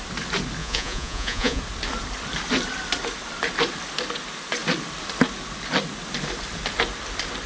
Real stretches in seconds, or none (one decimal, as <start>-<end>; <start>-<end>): 0.0-0.6; 1.6-7.5